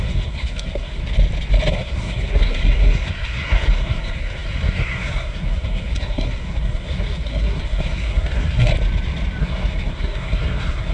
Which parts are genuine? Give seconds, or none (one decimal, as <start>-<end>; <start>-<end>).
1.0-1.7; 8.7-9.4